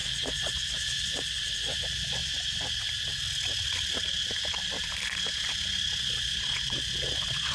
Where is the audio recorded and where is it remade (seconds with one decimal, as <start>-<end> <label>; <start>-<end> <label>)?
0.0-2.2 remade; 2.2-6.0 recorded; 6.0-7.5 remade